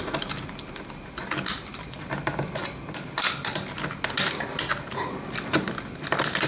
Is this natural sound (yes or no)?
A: yes